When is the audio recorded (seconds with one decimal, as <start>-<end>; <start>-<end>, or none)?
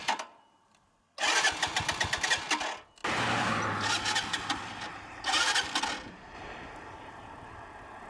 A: 0.0-8.1